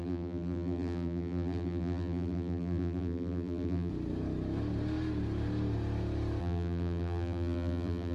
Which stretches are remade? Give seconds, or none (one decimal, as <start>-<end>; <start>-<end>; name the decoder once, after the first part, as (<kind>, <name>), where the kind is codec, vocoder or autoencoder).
0.0-3.9 (vocoder, BigVGAN v2); 6.4-8.1